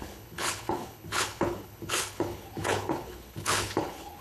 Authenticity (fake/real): fake